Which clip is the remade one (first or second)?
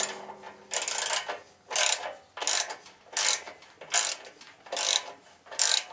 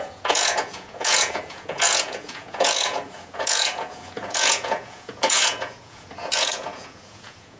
second